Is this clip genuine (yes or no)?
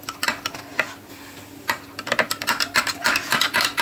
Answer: yes